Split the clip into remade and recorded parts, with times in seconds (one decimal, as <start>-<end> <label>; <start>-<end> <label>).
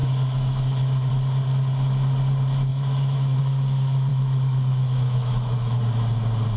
0.0-1.1 remade; 1.1-2.7 recorded; 2.7-3.4 remade; 3.4-4.1 recorded; 4.1-5.8 remade; 5.8-6.6 recorded